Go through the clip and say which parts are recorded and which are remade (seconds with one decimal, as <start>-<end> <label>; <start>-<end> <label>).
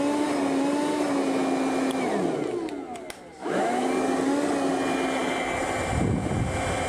0.0-3.4 recorded; 3.4-3.9 remade; 3.9-6.9 recorded